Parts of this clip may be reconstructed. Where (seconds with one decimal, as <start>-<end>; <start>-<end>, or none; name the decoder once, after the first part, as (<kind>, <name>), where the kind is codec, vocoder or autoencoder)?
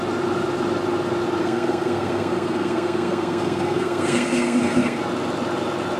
1.4-5.0 (codec, SNAC)